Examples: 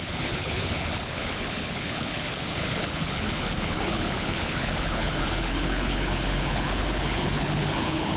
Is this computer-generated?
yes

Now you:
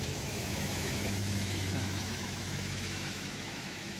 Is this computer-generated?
yes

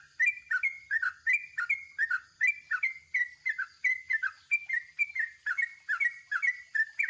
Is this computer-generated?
no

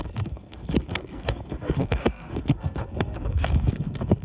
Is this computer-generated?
yes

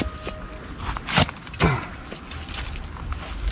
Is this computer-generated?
no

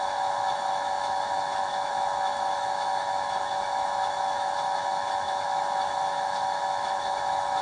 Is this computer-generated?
yes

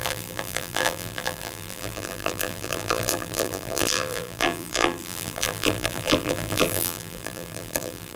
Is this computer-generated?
yes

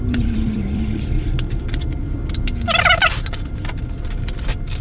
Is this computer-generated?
yes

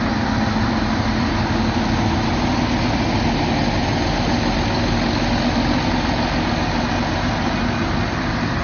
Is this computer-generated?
no